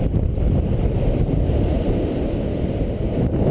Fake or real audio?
real